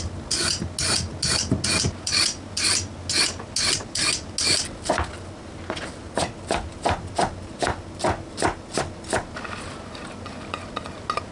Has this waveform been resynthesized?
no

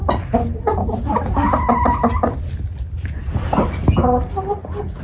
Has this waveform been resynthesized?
no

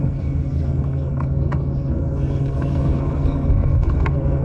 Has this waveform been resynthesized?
yes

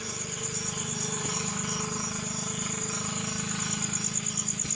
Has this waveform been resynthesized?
no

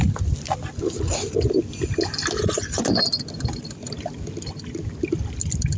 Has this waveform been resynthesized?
no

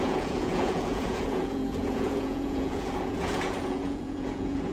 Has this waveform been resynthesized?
yes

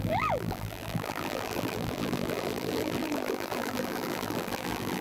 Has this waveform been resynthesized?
yes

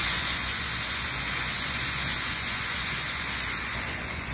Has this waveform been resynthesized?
yes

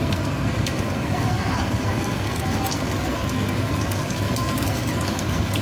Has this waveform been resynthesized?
yes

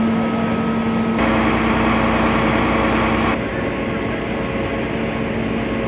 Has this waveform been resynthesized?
no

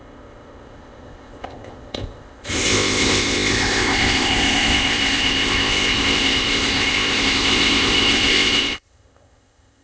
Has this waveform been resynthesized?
yes